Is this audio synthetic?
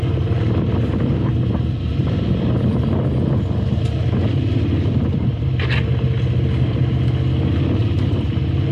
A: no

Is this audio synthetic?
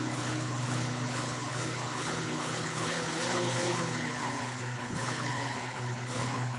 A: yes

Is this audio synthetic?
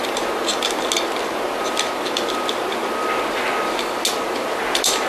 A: no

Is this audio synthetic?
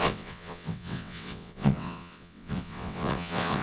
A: yes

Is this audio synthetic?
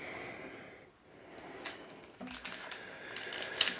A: no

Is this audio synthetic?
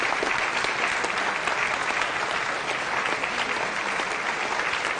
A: no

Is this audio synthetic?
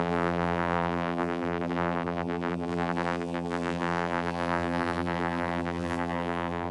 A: yes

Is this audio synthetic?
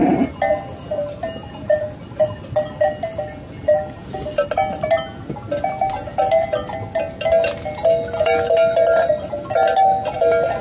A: no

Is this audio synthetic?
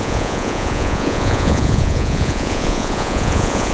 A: yes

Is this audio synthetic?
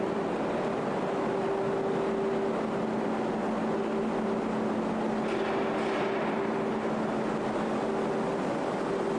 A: no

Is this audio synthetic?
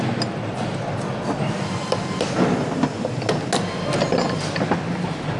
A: no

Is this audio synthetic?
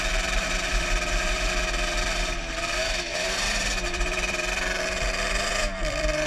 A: yes